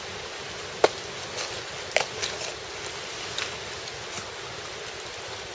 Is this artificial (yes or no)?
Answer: no